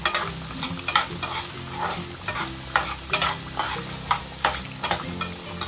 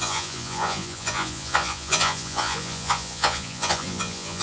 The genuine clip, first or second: first